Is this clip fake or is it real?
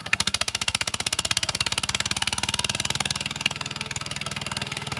fake